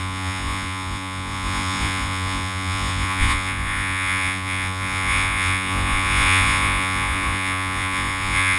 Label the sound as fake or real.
fake